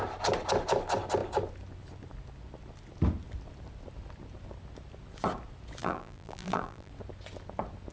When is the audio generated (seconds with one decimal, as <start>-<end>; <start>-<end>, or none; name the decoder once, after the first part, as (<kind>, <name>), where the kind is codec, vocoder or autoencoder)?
5.8-6.9 (vocoder, BigVGAN v2)